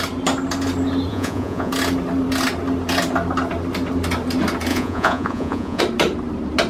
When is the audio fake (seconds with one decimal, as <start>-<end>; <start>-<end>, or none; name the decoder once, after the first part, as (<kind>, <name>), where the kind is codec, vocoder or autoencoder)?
1.1-1.7 (vocoder, Vocos); 4.7-5.8